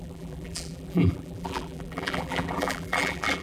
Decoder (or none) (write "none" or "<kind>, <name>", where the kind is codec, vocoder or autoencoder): vocoder, BigVGAN v2